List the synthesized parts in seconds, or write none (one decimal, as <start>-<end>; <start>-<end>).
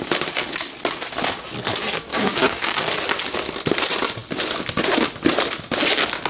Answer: 2.1-2.8